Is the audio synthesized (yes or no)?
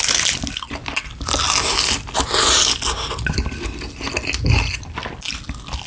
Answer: no